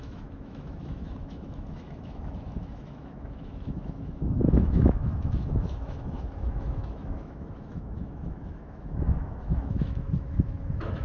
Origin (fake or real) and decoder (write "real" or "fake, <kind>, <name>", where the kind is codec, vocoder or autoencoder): fake, autoencoder, DAC-VAE